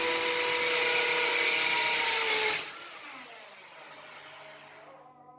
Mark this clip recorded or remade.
recorded